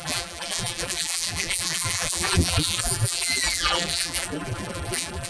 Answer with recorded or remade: remade